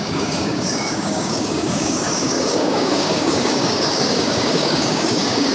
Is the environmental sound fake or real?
fake